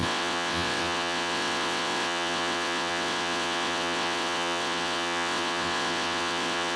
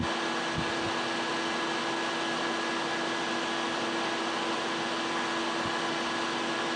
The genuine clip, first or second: second